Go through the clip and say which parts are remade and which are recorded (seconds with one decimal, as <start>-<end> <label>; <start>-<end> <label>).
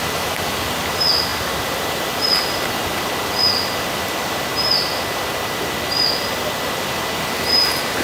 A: 0.0-8.0 recorded